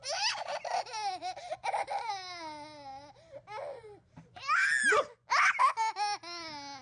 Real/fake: real